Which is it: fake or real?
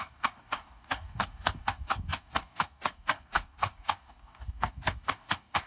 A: fake